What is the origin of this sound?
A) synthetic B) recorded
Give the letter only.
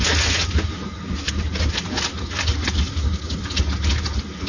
B